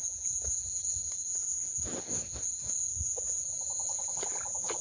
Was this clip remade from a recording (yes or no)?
no